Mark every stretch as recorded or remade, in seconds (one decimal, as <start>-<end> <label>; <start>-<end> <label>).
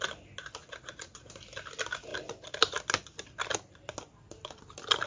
0.0-0.6 recorded; 0.6-1.3 remade; 1.3-5.1 recorded